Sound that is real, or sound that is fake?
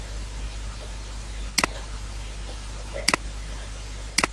real